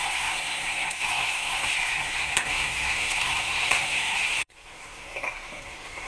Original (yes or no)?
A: no